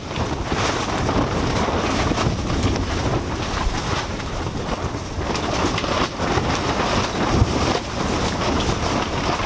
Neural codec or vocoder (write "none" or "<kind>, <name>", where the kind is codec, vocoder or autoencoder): none